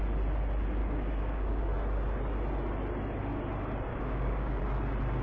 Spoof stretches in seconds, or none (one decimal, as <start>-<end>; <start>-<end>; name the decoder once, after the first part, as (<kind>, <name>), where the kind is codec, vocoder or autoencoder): 0.8-1.7 (codec, DAC); 3.9-4.6